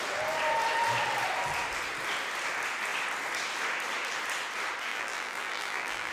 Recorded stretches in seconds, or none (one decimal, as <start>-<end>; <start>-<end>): 0.0-4.9